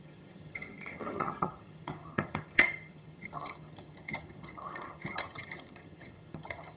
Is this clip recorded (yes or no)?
no